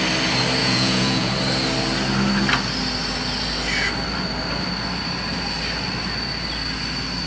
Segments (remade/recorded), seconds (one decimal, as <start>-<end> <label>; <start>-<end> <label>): 0.0-0.6 recorded; 0.6-1.3 remade; 1.3-7.3 recorded